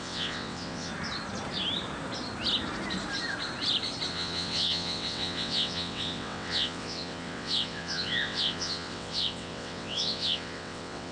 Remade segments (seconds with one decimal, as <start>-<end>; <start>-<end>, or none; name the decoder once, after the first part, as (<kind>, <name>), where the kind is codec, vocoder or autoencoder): 0.0-0.9 (vocoder, WaveNeXt); 4.1-11.1